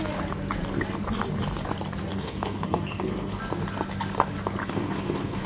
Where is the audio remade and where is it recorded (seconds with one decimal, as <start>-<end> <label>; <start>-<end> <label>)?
0.0-2.1 recorded; 2.1-3.4 remade; 3.4-4.6 recorded; 4.6-5.5 remade